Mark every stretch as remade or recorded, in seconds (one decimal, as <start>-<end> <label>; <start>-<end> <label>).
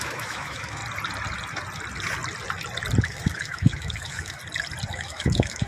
0.0-0.8 remade; 0.8-3.0 recorded; 3.0-4.4 remade; 4.4-4.9 recorded; 4.9-5.7 remade